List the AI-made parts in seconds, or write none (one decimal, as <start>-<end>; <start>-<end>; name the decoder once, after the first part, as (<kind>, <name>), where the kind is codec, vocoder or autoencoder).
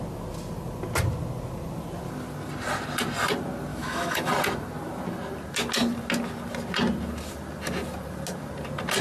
3.7-4.3 (autoencoder, DAC-VAE)